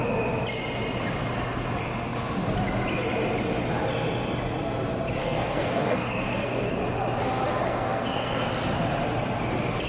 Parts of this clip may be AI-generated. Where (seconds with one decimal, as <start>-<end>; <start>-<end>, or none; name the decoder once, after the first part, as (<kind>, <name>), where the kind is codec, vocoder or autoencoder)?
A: 5.2-6.8 (codec, SNAC); 7.6-8.5